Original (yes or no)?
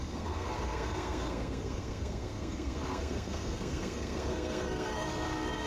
no